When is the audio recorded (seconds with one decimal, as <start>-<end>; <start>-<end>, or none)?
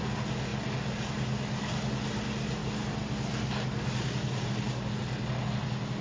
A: 0.0-6.0